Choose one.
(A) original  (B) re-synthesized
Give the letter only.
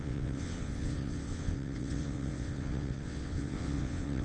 B